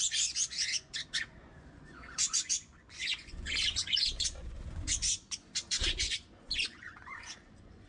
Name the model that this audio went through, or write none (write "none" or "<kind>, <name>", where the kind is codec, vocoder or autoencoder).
vocoder, Vocos